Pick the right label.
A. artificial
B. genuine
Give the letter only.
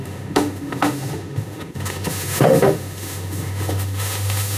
A